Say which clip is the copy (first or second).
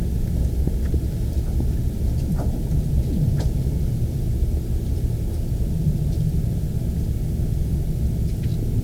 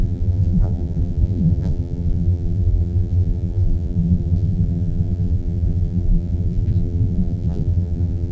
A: second